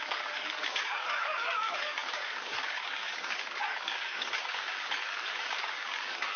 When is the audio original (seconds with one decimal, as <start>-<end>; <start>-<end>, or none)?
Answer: none

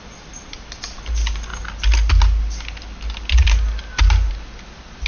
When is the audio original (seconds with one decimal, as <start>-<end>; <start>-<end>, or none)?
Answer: 0.0-5.1